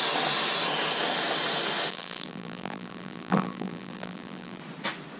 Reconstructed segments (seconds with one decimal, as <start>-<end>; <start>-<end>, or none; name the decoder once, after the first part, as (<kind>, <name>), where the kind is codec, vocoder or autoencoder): 1.9-4.6 (vocoder, BigVGAN v2)